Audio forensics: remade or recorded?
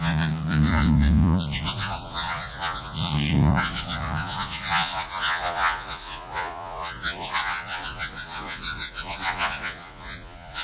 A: remade